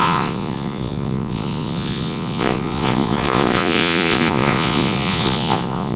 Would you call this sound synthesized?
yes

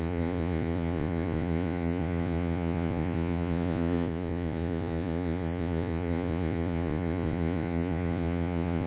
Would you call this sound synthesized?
yes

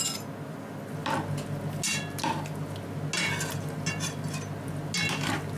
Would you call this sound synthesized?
no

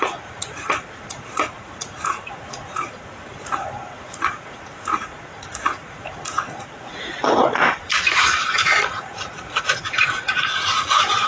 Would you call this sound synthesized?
yes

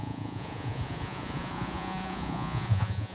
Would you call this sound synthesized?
yes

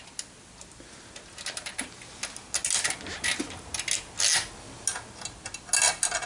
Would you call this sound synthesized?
no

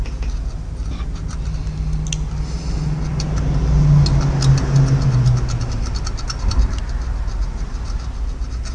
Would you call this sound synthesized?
no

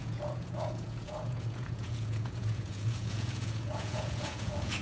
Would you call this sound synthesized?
yes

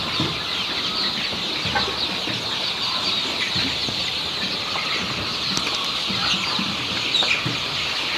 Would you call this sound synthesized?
no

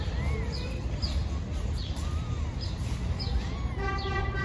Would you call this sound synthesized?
no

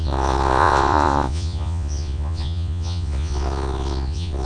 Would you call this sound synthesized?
yes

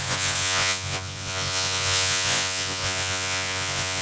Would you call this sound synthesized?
yes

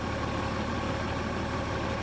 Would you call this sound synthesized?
no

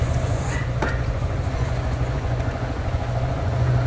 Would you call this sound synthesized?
yes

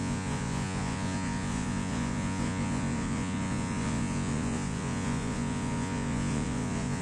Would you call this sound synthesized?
yes